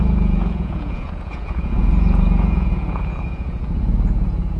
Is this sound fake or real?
fake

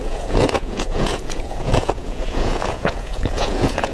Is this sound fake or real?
fake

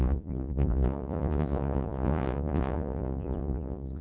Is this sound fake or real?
fake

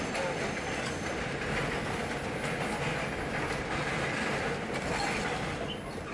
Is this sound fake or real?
real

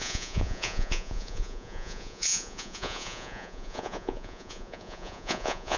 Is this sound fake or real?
fake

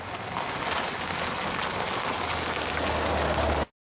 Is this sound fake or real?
real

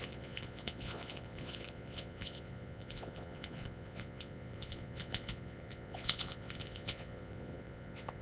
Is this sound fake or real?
fake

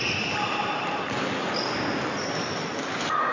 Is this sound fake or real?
real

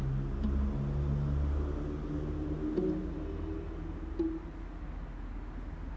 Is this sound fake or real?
real